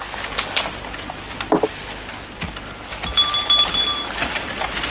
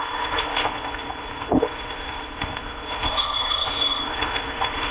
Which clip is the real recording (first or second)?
first